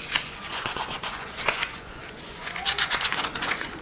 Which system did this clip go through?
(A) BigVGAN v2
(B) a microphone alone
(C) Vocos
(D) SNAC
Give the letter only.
C